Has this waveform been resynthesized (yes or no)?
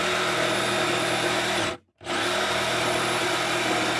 no